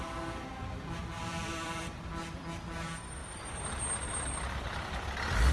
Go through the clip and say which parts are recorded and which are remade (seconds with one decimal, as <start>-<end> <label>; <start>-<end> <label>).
0.0-1.0 recorded; 1.0-2.0 remade; 2.0-3.2 recorded; 3.2-4.9 remade; 4.9-5.5 recorded